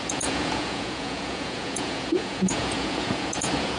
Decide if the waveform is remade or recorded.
remade